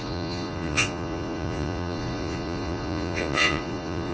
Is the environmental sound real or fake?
fake